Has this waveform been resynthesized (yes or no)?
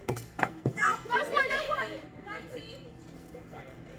yes